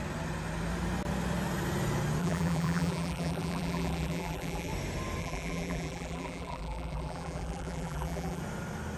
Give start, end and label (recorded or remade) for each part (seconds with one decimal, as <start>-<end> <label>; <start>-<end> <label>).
0.0-2.2 recorded; 2.2-4.7 remade; 4.7-5.2 recorded; 5.2-8.4 remade; 8.4-9.0 recorded